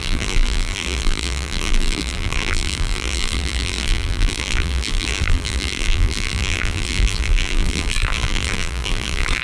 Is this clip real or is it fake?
fake